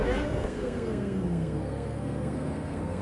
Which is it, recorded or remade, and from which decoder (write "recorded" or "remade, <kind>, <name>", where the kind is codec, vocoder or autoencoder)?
remade, codec, SNAC